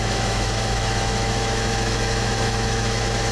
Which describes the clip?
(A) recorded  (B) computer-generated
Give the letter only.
B